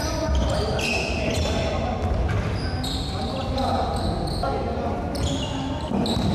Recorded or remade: recorded